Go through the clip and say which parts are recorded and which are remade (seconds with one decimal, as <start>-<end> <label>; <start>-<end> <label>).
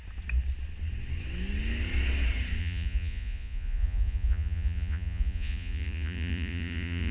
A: 0.0-2.6 recorded; 2.6-7.1 remade